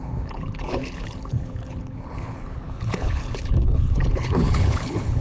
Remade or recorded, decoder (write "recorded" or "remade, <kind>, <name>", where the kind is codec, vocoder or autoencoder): remade, codec, HILCodec